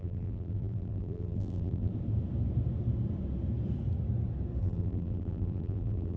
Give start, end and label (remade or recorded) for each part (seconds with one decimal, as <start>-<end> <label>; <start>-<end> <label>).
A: 0.0-1.9 remade; 1.9-4.6 recorded; 4.6-6.2 remade